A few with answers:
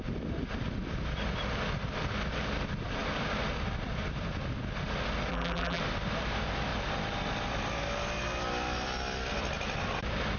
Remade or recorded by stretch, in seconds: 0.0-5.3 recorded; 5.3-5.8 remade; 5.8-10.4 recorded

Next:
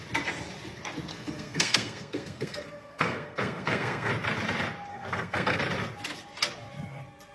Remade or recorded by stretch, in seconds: 0.0-1.1 recorded; 1.1-4.1 remade; 4.1-4.9 recorded; 4.9-5.6 remade; 5.6-7.3 recorded

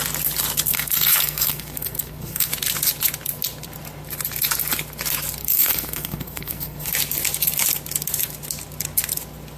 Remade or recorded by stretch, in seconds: 0.0-0.7 recorded; 0.7-2.5 remade; 2.5-5.4 recorded; 5.4-6.9 remade; 6.9-9.6 recorded

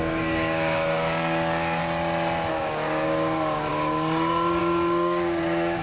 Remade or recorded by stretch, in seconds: 0.0-1.8 remade; 1.8-2.5 recorded; 2.5-5.8 remade

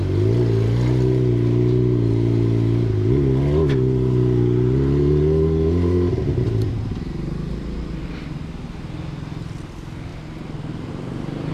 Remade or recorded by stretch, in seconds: 0.0-11.5 recorded

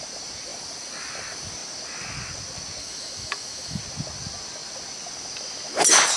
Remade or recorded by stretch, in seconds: 0.0-2.8 recorded; 2.8-3.8 remade; 3.8-6.2 recorded